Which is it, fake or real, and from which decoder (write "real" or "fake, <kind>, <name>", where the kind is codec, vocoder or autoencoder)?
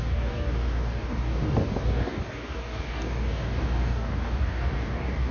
fake, codec, DAC